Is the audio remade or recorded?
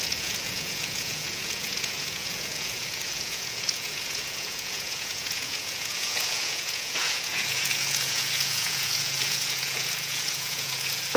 remade